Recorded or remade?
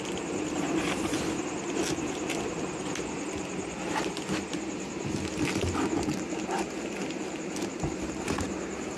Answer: recorded